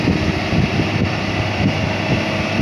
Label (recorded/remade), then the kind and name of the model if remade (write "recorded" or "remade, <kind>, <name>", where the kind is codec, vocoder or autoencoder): recorded